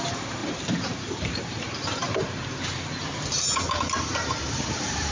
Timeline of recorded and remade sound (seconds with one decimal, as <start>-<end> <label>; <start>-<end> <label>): 0.0-2.0 remade; 2.0-4.0 recorded; 4.0-5.1 remade

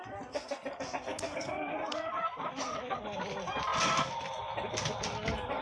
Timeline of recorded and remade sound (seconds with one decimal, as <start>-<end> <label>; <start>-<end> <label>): 0.0-1.1 recorded; 1.1-1.7 remade; 1.7-2.6 recorded; 2.6-3.2 remade; 3.2-5.6 recorded

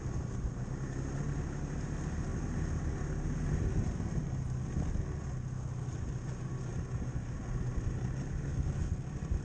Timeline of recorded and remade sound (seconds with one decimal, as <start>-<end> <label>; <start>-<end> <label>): 0.0-2.3 recorded; 2.3-4.2 remade; 4.2-6.7 recorded; 6.7-7.4 remade; 7.4-9.4 recorded

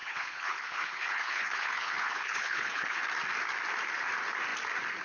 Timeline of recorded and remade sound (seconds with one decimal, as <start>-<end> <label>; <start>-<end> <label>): 0.0-3.0 remade; 3.0-5.0 recorded

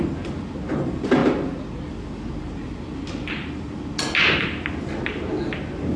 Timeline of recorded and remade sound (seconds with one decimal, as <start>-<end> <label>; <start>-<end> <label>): 0.0-6.0 recorded

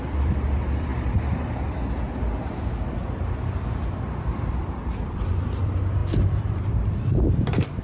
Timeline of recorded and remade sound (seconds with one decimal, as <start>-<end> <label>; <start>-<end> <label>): 0.0-0.9 remade; 0.9-2.7 recorded; 2.7-7.8 remade

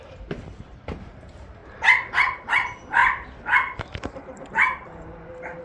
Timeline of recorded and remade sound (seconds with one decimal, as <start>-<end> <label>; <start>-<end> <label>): 0.0-5.6 remade

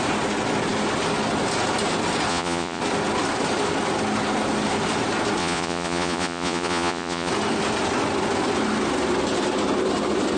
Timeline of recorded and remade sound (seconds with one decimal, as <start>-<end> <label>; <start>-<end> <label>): 0.0-2.3 recorded; 2.3-2.8 remade; 2.8-5.4 recorded; 5.4-7.3 remade; 7.3-10.4 recorded